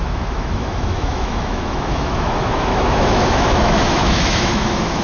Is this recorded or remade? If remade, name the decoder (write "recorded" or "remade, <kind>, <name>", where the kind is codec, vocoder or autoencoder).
remade, autoencoder, DAC-VAE